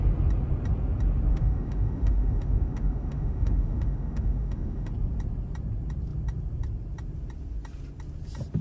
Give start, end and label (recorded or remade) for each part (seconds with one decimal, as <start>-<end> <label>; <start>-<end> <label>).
0.0-1.3 recorded; 1.3-4.9 remade; 4.9-8.6 recorded